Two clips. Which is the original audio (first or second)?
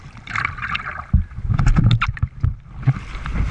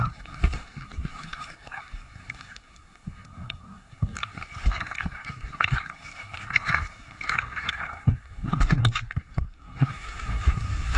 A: first